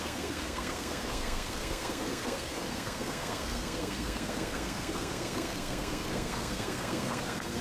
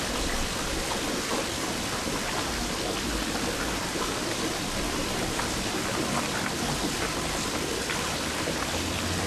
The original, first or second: second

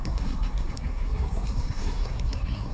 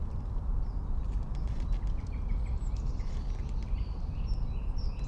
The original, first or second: second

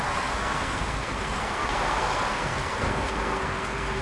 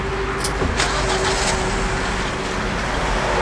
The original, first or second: second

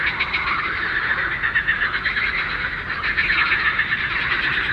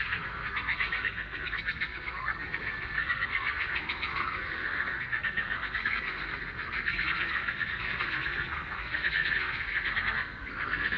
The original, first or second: first